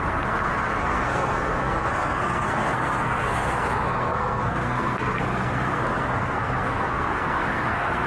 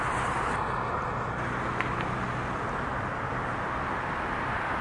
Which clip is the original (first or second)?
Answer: second